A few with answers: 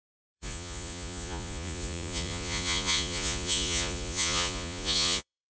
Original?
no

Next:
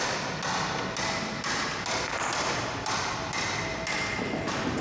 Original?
yes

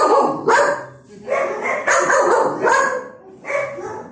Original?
yes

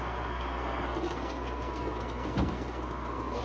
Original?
no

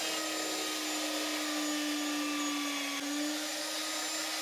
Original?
yes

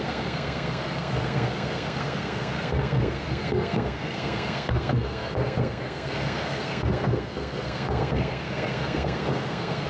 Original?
no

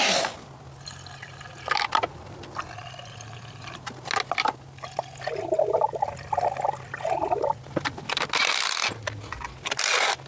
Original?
yes